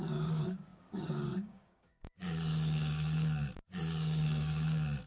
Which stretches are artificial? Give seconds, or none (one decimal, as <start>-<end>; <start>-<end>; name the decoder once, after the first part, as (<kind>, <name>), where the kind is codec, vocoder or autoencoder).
0.0-5.1 (codec, DAC)